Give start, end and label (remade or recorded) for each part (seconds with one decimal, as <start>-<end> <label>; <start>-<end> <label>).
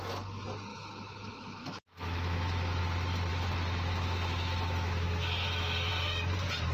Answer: 0.0-0.7 recorded; 0.7-2.8 remade; 2.8-3.3 recorded; 3.3-5.9 remade; 5.9-6.7 recorded